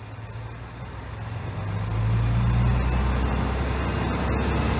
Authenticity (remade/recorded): recorded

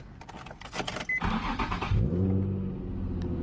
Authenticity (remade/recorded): recorded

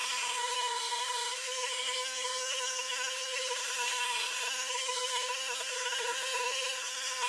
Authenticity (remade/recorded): remade